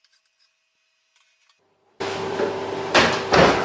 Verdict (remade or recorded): recorded